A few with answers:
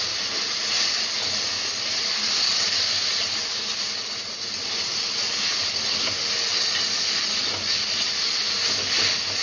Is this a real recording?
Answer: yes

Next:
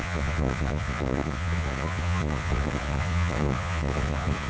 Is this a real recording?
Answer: no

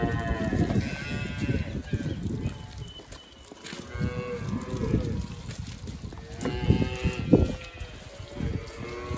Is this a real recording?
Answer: yes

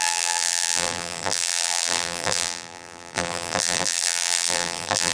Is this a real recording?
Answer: no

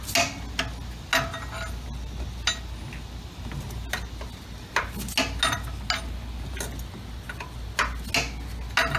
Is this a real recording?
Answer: yes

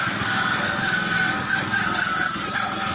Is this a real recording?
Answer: no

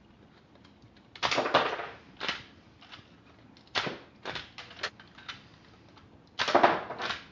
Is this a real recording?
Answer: yes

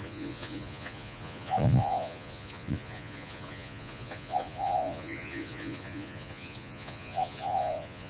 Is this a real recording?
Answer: no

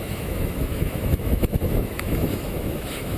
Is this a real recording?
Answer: no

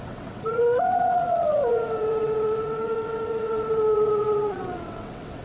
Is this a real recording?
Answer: no